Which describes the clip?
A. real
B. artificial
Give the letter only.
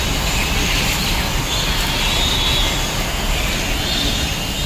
A